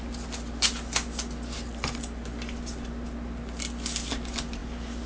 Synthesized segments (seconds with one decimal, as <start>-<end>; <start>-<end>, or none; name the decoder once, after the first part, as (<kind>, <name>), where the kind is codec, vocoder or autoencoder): none